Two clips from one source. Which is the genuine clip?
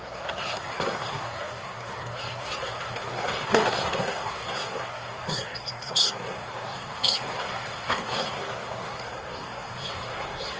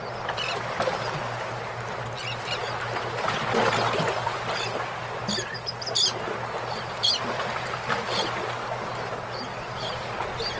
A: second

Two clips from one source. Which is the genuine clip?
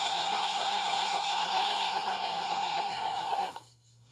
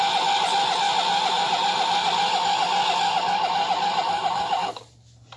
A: second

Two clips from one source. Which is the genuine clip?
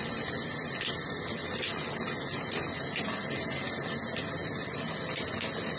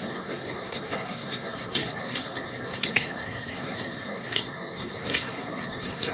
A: first